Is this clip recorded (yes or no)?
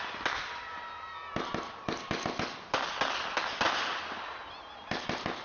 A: yes